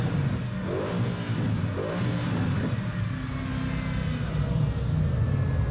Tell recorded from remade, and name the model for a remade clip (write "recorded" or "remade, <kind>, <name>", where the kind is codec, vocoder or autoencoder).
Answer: recorded